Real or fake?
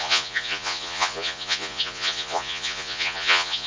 fake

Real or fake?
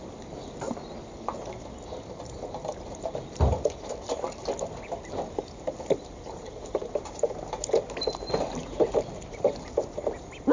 real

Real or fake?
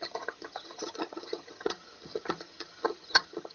fake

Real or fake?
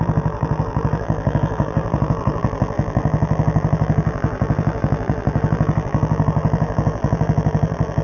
fake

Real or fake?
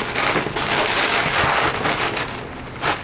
real